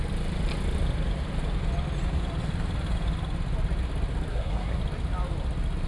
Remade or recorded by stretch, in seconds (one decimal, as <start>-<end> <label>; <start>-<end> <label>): 0.0-4.3 recorded; 4.3-4.8 remade; 4.8-5.9 recorded

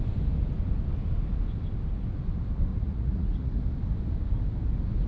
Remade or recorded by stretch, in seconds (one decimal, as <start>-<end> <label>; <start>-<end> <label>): 0.0-2.7 recorded; 2.7-3.5 remade; 3.5-5.1 recorded